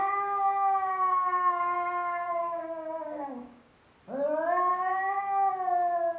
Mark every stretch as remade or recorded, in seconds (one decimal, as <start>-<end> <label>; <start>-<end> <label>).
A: 0.0-3.7 remade; 3.7-4.7 recorded; 4.7-5.5 remade; 5.5-6.2 recorded